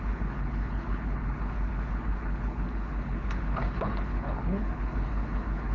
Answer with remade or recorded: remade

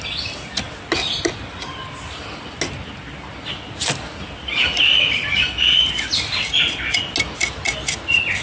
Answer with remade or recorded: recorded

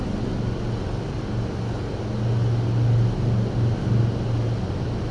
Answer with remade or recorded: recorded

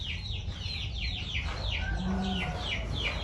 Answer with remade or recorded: recorded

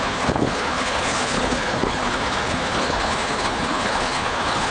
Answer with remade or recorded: remade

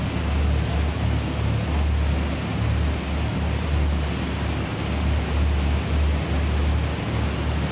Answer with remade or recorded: recorded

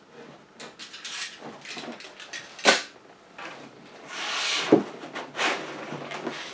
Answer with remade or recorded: recorded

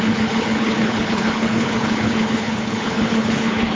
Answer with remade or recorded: remade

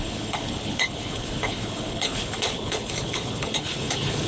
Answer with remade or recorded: remade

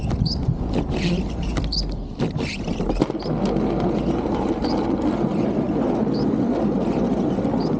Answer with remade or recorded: recorded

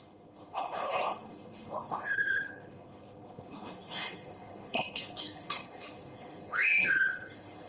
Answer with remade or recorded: remade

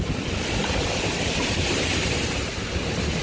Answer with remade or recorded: recorded